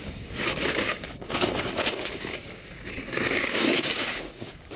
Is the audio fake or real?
fake